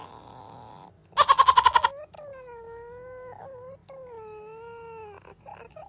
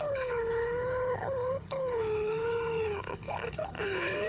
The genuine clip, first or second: first